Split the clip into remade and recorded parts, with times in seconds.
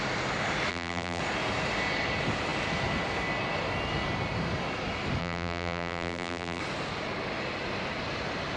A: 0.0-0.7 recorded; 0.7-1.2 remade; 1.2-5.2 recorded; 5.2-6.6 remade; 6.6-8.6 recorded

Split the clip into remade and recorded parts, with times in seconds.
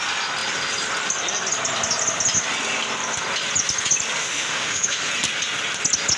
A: 0.0-4.2 recorded; 4.2-5.1 remade; 5.1-6.2 recorded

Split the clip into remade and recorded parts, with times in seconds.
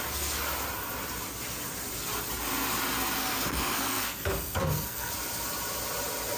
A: 0.0-3.2 recorded; 3.2-5.1 remade; 5.1-6.4 recorded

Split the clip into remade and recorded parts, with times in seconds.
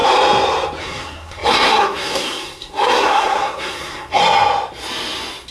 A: 0.0-0.8 recorded; 0.8-4.2 remade; 4.2-5.5 recorded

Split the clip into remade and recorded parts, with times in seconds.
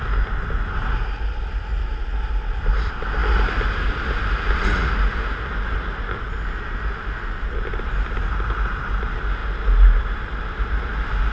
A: 0.0-11.3 recorded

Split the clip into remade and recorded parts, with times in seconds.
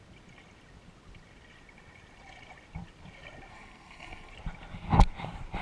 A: 0.0-3.5 recorded; 3.5-4.3 remade; 4.3-5.6 recorded